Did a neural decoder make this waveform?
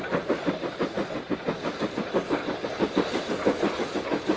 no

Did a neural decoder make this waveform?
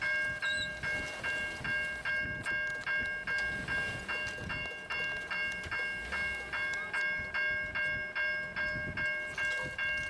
no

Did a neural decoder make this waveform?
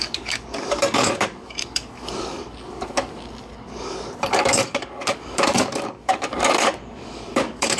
yes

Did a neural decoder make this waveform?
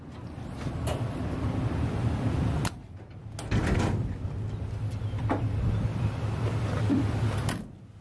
no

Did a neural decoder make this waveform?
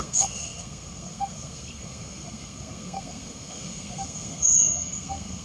yes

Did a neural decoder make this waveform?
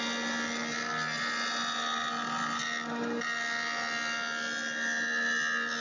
no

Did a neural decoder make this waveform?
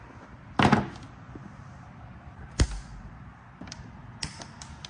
no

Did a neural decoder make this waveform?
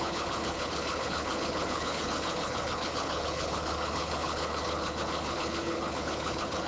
yes